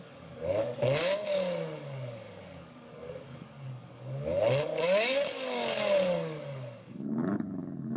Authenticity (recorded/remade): remade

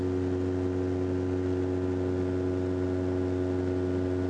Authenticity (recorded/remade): recorded